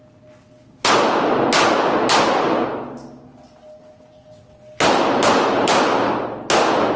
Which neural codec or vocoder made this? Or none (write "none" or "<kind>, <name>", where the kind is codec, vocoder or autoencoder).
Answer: none